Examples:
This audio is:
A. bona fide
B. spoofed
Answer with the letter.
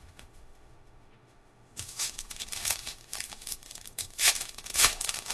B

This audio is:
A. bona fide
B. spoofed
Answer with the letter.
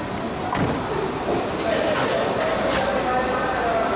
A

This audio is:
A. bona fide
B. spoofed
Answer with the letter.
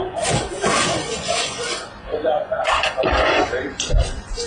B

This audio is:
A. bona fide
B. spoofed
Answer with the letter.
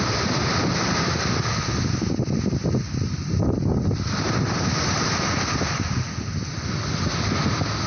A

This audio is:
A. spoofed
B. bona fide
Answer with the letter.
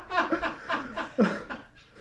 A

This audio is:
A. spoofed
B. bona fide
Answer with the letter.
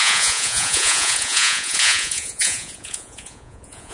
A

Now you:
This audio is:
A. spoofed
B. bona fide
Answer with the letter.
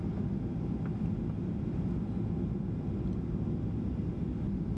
B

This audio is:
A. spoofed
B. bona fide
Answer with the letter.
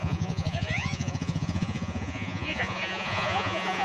A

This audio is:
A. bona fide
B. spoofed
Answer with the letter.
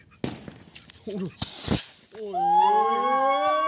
A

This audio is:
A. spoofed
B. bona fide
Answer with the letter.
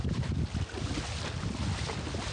B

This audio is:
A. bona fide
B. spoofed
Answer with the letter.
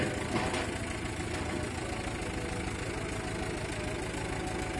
A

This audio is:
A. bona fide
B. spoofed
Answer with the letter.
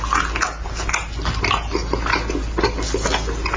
A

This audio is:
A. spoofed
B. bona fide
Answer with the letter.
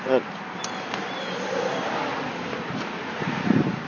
B